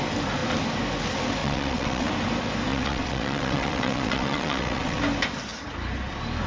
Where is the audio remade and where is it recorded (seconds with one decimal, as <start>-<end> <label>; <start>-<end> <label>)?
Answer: 0.0-1.4 recorded; 1.4-2.1 remade; 2.1-2.7 recorded; 2.7-5.0 remade; 5.0-6.5 recorded